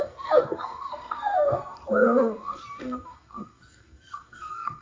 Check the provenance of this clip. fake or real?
fake